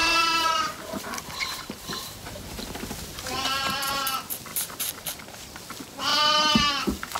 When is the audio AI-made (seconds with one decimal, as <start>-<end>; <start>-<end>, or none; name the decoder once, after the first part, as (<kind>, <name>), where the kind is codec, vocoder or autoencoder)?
0.0-3.8 (vocoder, BigVGAN v2); 4.5-5.1